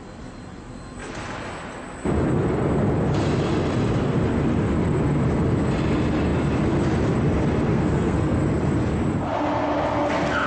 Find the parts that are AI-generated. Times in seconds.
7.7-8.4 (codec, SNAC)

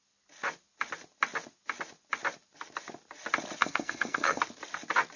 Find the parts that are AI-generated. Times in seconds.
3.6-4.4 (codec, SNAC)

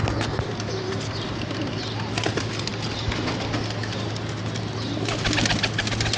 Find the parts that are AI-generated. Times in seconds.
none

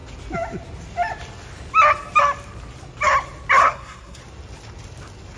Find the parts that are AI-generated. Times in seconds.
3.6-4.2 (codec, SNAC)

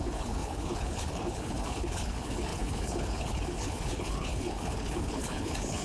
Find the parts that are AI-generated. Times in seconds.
0.0-5.8 (codec, HILCodec)

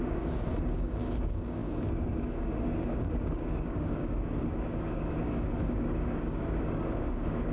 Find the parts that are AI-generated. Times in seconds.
0.0-7.5 (codec, DAC)

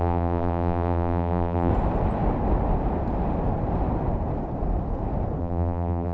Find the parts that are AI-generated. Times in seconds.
0.0-1.7 (vocoder, BigVGAN v2); 5.4-6.1